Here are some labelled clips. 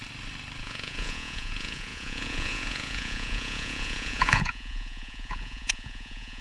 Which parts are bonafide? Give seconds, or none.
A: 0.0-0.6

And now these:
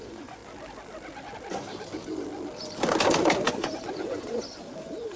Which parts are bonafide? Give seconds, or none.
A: 0.4-3.5

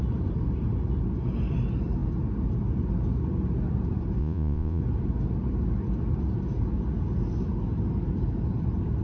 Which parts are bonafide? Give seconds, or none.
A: 0.0-4.2; 4.8-9.0

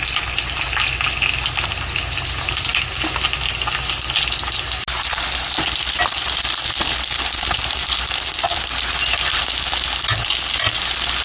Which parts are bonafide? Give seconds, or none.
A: 0.0-11.2

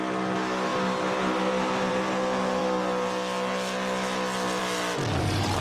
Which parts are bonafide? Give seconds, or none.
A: 0.0-5.6

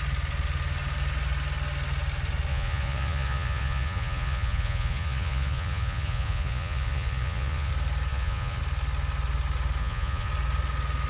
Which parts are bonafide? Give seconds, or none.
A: 0.0-2.5; 7.7-8.1; 8.6-9.8; 10.3-11.1